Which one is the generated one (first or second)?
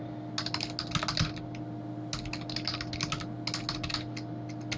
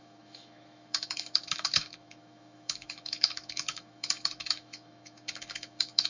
second